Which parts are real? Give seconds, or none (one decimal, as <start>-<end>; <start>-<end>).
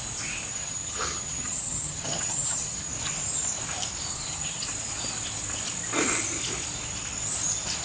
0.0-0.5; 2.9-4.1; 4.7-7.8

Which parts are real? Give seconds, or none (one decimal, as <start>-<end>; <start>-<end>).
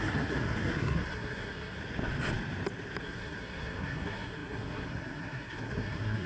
1.8-3.0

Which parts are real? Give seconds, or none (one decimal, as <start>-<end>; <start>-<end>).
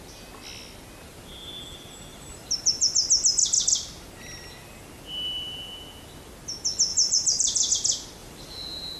0.0-2.1; 2.9-6.9; 7.7-8.2